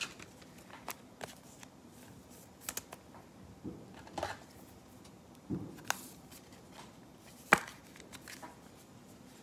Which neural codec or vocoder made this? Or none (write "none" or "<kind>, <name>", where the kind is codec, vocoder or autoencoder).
none